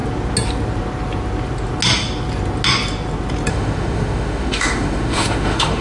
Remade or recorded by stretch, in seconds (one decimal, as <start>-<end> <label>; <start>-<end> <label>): 0.0-3.5 recorded; 3.5-5.8 remade